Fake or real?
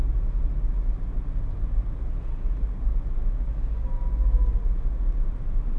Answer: real